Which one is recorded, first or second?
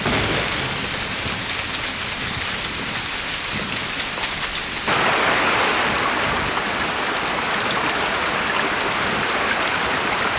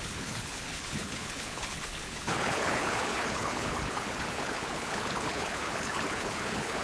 first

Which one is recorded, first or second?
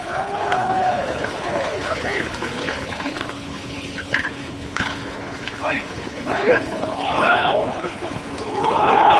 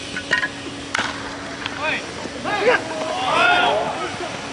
second